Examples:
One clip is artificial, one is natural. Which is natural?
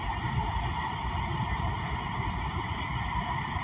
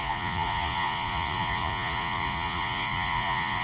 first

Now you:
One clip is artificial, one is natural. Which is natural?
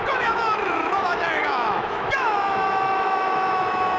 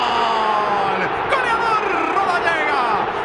second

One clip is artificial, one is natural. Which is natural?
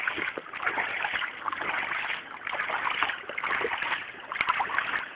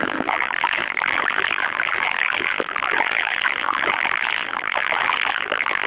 first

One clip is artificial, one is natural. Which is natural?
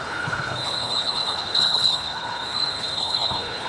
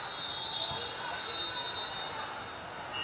second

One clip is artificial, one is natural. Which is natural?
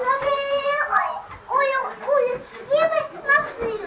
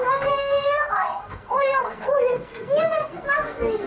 first